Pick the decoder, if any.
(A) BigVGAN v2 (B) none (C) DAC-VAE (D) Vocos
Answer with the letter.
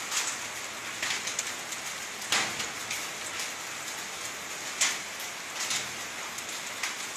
B